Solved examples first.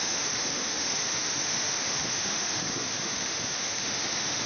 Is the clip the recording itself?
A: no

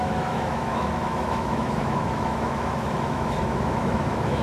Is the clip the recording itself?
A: no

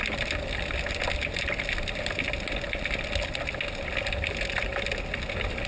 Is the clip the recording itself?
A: yes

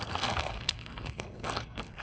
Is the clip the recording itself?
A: no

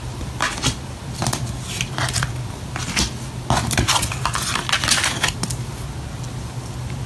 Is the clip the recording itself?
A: yes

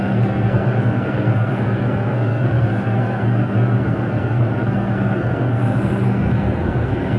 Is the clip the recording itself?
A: no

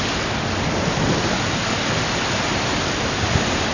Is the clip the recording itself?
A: yes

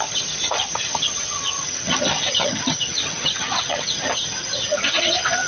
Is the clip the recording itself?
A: no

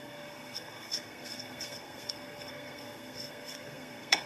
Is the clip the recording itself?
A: no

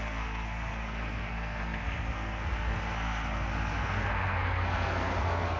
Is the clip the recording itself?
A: no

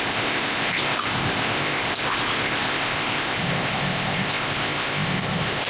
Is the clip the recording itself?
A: no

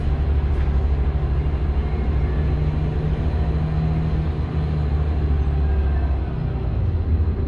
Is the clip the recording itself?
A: yes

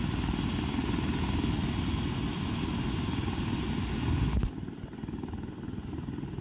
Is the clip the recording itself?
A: yes